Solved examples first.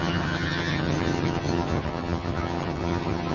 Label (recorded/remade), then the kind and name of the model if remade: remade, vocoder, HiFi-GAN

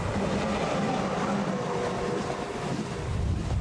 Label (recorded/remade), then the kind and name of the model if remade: recorded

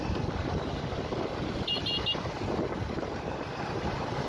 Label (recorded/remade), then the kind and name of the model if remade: recorded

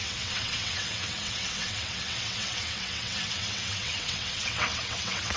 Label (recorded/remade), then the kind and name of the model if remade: remade, vocoder, WaveNeXt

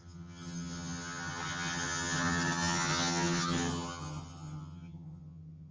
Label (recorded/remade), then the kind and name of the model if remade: remade, vocoder, HiFi-GAN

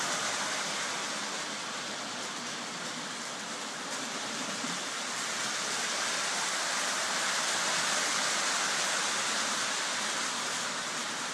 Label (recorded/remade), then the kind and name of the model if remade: remade, vocoder, BigVGAN v2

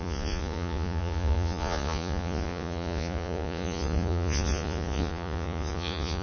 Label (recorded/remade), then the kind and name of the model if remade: remade, vocoder, Vocos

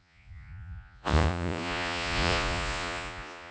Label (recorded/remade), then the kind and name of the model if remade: remade, vocoder, Vocos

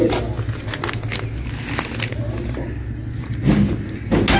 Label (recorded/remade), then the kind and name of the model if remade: recorded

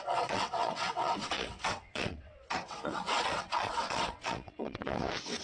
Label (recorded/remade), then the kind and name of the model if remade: remade, vocoder, WaveNeXt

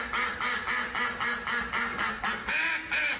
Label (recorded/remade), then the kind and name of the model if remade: recorded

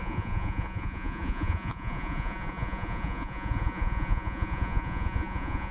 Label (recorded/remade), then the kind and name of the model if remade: remade, vocoder, Vocos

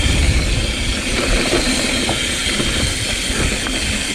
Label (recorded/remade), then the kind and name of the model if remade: remade, vocoder, BigVGAN v2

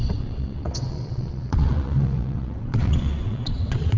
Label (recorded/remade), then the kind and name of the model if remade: remade, vocoder, WaveNeXt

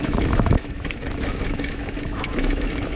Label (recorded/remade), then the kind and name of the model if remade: remade, autoencoder, DAC-VAE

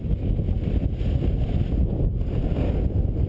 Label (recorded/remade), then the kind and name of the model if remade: recorded